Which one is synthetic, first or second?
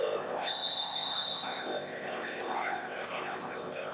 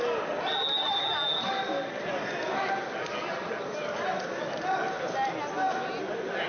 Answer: first